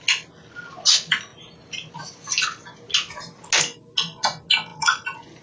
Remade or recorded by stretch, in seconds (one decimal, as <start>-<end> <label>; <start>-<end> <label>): 0.0-5.4 recorded